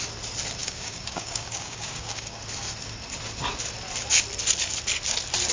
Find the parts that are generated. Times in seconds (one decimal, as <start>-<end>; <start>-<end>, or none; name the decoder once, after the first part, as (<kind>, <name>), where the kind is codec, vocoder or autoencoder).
0.6-2.4 (codec, DAC)